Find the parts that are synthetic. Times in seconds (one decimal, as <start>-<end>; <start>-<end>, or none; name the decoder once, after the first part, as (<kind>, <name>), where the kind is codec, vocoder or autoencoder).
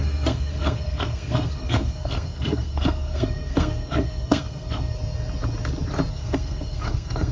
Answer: 0.0-4.9 (codec, SNAC); 6.1-7.3